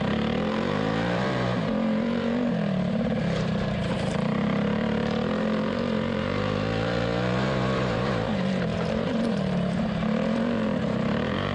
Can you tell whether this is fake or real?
fake